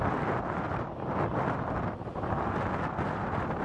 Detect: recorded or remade recorded